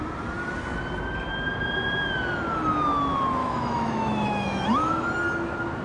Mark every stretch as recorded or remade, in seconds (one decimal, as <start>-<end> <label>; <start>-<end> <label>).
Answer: 0.0-3.4 recorded; 3.4-5.1 remade; 5.1-5.8 recorded